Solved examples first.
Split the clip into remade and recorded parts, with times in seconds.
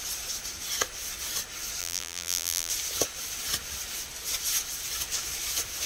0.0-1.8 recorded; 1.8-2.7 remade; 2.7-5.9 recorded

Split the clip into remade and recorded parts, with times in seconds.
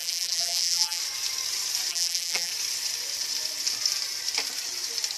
0.0-1.0 remade; 1.0-1.9 recorded; 1.9-2.5 remade; 2.5-5.2 recorded